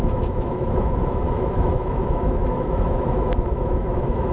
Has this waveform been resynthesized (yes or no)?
yes